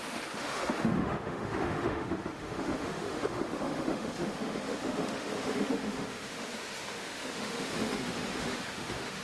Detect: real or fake fake